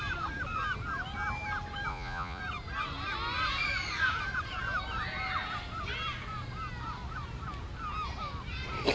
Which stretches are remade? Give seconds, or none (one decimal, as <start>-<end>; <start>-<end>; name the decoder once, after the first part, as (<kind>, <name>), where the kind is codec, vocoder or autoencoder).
1.9-2.4 (vocoder, Vocos)

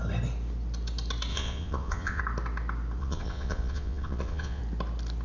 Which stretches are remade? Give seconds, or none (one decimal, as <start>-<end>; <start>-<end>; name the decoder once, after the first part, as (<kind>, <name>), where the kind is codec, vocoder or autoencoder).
1.3-2.2 (vocoder, Vocos); 3.0-4.6

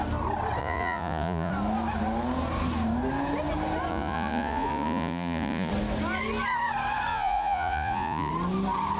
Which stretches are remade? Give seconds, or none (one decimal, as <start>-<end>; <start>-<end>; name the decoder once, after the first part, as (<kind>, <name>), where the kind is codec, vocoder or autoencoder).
0.6-1.5 (vocoder, Vocos); 3.9-5.7; 7.1-8.3